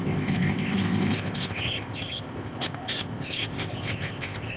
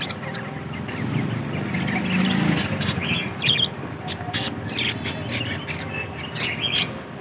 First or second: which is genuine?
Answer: second